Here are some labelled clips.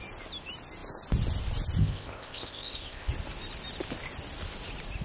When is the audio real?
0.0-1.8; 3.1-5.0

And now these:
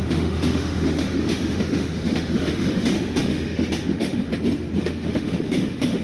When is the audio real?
4.3-4.8